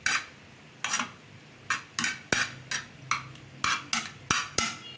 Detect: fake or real real